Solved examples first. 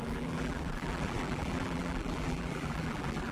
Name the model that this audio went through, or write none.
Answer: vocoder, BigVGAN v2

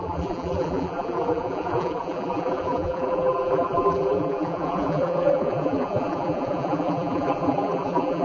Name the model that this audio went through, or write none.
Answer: vocoder, BigVGAN v2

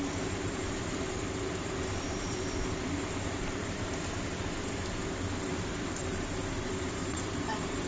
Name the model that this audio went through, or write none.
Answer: vocoder, BigVGAN v2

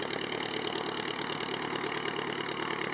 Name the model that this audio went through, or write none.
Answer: none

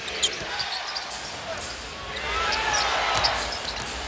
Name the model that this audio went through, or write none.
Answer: none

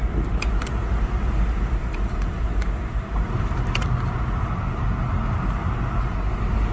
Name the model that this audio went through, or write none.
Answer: none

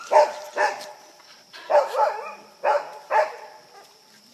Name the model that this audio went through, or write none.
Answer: vocoder, BigVGAN v2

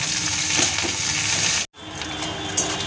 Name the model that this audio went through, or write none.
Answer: none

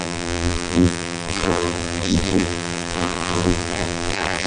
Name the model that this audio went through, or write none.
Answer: vocoder, BigVGAN v2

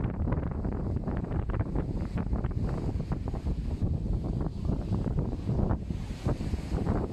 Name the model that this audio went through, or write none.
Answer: vocoder, BigVGAN v2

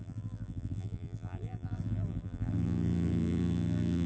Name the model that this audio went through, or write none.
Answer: vocoder, BigVGAN v2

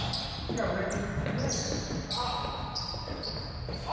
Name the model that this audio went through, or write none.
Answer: none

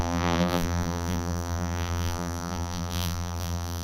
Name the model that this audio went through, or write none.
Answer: vocoder, BigVGAN v2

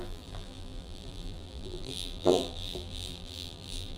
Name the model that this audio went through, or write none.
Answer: vocoder, BigVGAN v2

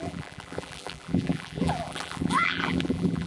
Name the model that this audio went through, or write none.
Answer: vocoder, BigVGAN v2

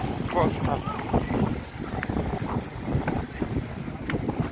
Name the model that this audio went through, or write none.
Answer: none